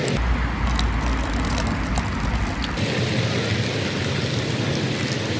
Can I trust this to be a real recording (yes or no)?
yes